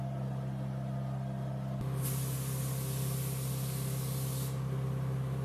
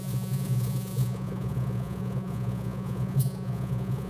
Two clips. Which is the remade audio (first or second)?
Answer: second